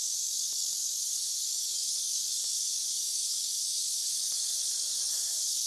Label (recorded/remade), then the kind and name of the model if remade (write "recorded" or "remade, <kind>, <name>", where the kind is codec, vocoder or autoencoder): remade, codec, DAC